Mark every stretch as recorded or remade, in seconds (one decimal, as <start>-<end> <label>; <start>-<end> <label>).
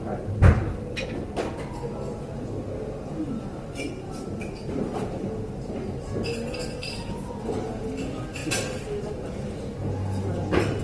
0.0-10.8 recorded